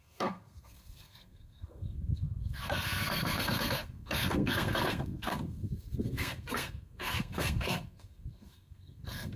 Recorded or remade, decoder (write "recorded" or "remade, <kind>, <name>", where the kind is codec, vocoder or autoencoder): remade, codec, SNAC